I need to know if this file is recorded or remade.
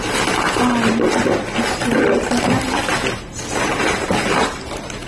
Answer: recorded